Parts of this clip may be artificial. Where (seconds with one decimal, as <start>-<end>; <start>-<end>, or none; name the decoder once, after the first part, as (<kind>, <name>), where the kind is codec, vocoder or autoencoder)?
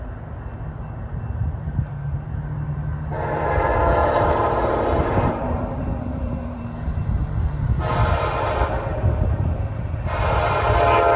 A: 4.0-7.2 (vocoder, BigVGAN v2); 8.9-10.0